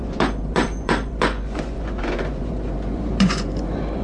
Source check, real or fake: fake